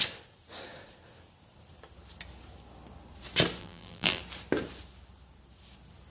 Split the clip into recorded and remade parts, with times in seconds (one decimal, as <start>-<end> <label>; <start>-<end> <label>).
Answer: 0.0-3.6 recorded; 3.6-4.2 remade; 4.2-6.1 recorded